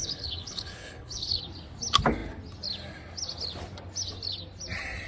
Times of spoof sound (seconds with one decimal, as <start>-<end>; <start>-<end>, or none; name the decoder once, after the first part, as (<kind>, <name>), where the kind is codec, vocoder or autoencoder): 0.0-1.4 (codec, HILCodec)